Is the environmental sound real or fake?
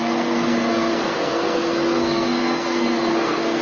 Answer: fake